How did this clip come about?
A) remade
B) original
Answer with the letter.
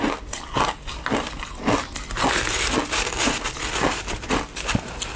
B